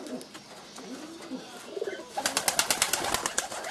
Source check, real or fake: real